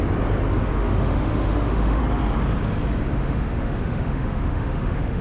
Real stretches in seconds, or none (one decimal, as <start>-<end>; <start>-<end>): 0.0-0.7; 2.0-3.2